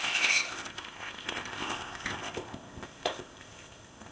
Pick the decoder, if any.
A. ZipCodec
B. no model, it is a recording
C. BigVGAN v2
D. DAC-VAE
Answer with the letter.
A